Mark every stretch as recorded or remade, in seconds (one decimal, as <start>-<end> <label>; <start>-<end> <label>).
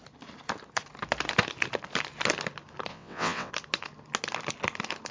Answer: 0.0-2.9 recorded; 2.9-3.5 remade; 3.5-5.1 recorded